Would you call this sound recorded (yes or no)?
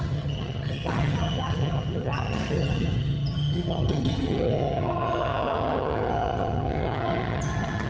no